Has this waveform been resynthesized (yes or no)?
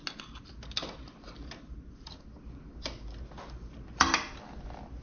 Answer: no